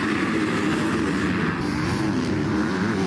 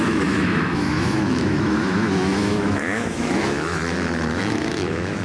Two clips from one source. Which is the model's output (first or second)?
second